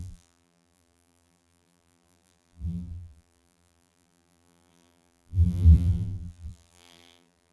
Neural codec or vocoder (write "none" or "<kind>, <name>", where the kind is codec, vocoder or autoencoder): vocoder, BigVGAN v2